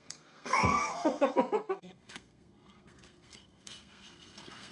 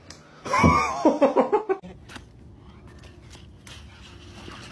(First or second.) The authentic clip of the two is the second